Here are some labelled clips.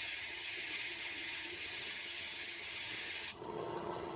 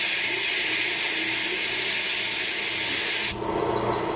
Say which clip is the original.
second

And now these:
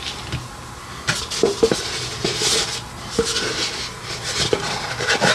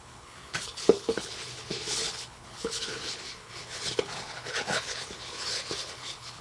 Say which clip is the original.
first